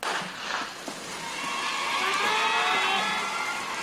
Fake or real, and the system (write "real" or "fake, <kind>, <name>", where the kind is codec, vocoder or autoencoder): real